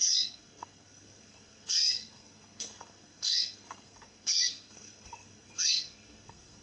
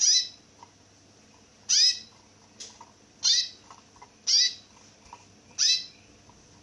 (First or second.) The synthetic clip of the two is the first